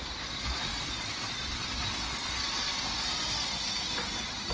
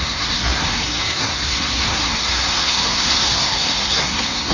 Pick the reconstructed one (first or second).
second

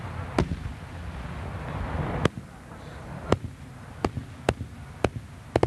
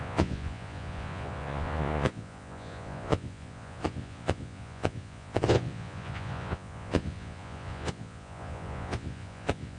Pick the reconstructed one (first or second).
second